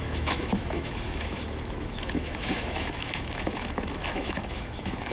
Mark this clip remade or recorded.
remade